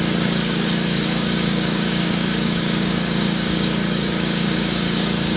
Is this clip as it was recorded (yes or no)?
no